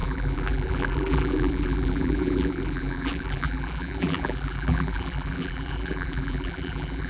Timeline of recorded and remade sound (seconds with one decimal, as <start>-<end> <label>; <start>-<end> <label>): 0.0-7.1 remade